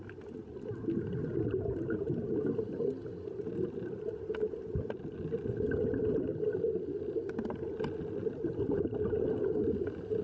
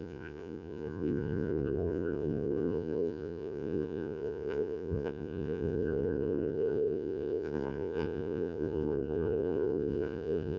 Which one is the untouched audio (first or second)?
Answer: first